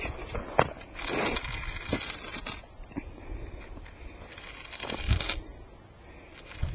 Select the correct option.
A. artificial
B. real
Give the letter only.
B